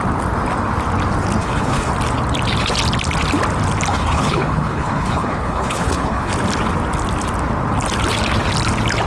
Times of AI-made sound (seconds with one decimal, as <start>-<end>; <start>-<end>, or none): 1.4-1.9; 3.9-6.3